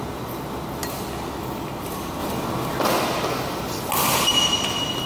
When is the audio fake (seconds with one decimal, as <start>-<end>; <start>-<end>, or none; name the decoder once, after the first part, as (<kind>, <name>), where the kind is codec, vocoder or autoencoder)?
none